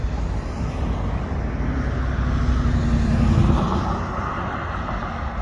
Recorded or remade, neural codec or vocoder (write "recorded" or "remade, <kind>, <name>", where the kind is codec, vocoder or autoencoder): recorded